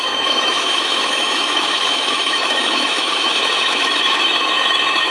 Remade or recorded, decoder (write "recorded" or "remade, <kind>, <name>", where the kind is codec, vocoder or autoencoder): remade, autoencoder, DAC-VAE